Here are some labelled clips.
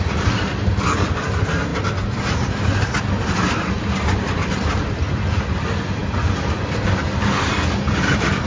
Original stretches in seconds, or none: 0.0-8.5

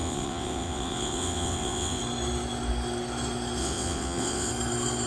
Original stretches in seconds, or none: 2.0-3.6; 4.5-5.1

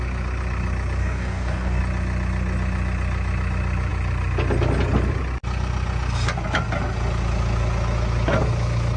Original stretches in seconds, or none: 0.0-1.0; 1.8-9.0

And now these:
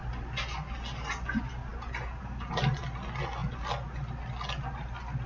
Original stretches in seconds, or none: 0.0-5.3